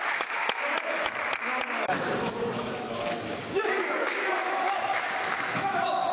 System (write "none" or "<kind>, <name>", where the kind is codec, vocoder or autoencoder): autoencoder, DAC-VAE